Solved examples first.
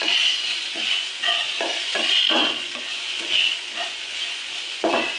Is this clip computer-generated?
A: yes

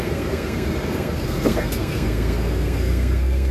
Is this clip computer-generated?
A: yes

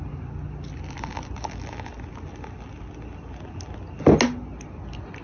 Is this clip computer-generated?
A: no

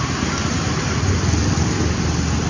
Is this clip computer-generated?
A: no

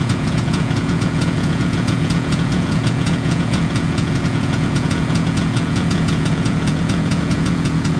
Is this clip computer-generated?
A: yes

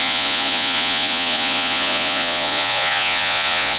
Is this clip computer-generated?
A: yes